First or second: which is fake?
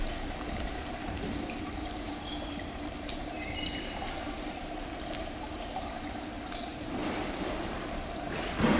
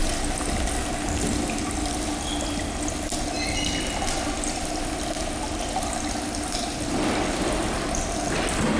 first